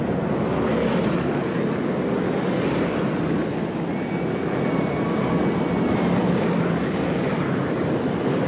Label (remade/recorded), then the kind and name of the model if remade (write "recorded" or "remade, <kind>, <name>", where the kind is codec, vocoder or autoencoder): recorded